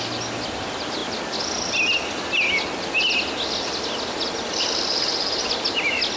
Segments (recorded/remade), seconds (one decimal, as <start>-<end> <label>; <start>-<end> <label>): 0.0-6.2 recorded